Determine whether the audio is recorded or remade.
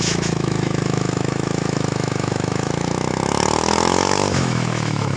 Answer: remade